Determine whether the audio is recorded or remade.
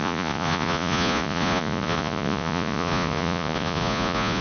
remade